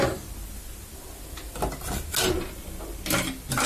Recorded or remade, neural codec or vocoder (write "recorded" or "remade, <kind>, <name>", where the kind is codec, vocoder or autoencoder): recorded